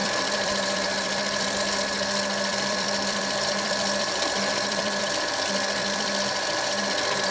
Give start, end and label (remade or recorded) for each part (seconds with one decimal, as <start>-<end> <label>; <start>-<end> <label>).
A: 0.0-1.6 remade; 1.6-2.5 recorded; 2.5-5.0 remade; 5.0-5.8 recorded; 5.8-6.8 remade; 6.8-7.3 recorded